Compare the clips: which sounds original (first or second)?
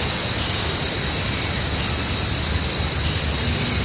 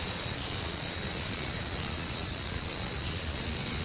first